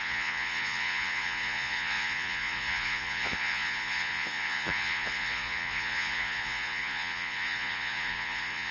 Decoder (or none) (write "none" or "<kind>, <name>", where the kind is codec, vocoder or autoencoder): vocoder, Vocos